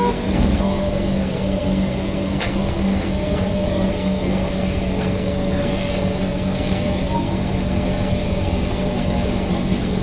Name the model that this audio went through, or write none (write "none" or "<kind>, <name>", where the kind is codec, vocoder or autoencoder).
codec, SNAC